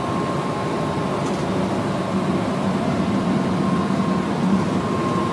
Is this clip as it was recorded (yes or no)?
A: yes